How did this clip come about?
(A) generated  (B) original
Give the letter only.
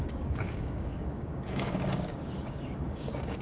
A